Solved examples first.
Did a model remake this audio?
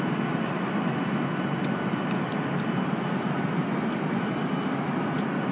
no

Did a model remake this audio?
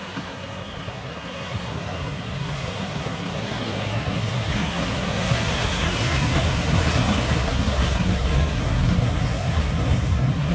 yes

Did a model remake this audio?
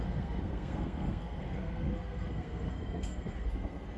yes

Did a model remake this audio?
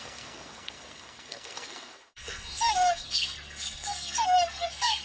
yes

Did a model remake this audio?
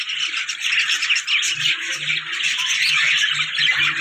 no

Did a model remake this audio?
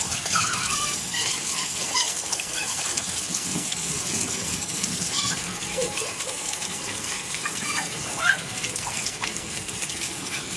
yes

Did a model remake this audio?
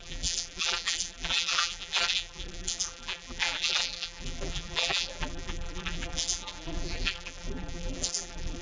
yes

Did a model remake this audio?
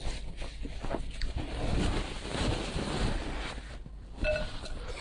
no